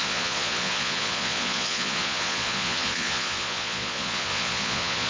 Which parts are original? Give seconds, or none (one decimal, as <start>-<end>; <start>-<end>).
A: none